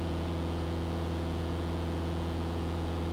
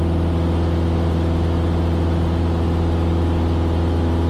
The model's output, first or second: first